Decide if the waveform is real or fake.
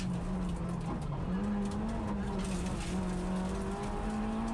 real